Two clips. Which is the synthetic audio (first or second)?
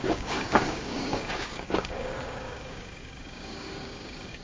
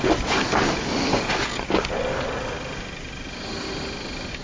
first